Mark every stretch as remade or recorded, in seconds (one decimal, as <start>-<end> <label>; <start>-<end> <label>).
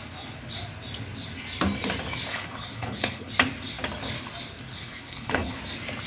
0.0-2.3 recorded; 2.3-3.3 remade; 3.3-4.7 recorded; 4.7-5.6 remade; 5.6-6.1 recorded